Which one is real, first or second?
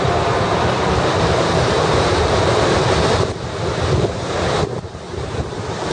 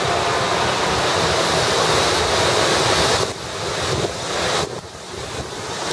second